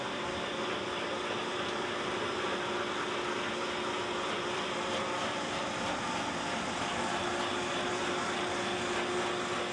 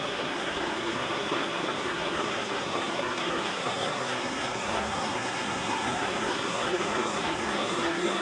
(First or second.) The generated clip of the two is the second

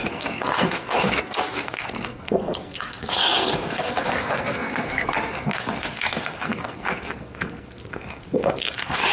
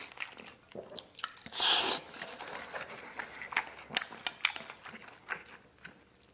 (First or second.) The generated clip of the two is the first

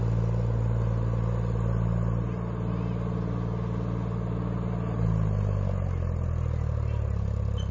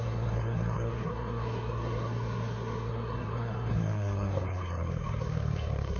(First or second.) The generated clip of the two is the second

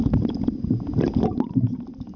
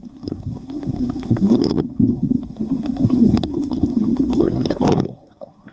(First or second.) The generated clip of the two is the second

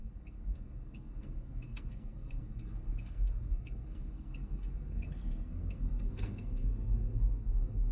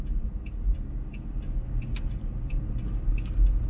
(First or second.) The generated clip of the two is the first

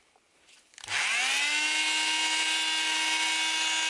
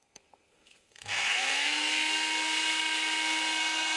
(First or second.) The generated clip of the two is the second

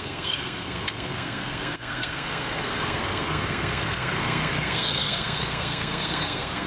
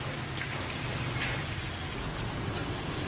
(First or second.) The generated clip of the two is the first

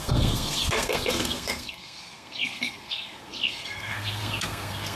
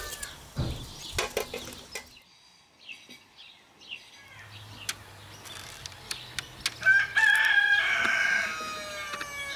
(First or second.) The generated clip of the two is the first